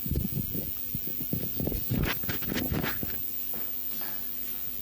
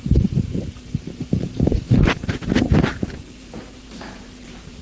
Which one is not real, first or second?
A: second